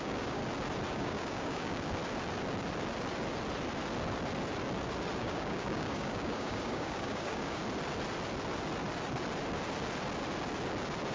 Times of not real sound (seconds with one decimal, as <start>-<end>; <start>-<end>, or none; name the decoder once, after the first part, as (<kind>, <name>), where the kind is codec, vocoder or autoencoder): 0.0-0.4 (codec, DAC); 0.9-2.0; 5.2-7.6